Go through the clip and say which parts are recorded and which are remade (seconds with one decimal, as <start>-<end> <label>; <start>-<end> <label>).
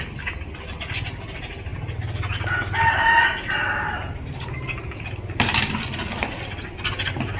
0.0-7.4 recorded